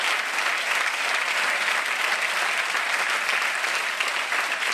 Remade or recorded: recorded